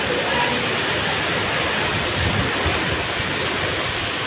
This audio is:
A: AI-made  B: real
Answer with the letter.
B